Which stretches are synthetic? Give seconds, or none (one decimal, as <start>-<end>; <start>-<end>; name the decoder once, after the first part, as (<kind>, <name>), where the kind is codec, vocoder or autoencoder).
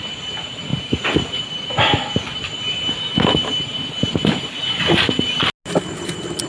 none